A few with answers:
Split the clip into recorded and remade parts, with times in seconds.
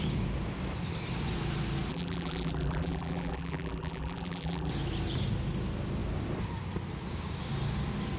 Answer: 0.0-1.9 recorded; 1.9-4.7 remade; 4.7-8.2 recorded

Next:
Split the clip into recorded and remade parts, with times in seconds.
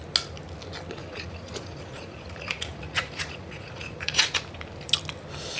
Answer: 0.0-1.0 recorded; 1.0-4.4 remade; 4.4-5.6 recorded